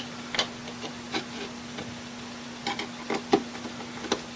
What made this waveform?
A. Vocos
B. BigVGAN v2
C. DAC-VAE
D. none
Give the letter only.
D